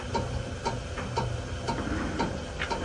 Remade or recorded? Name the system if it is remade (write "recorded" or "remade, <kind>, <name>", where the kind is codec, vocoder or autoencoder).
recorded